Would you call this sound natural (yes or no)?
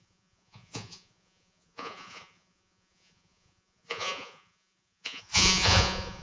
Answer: no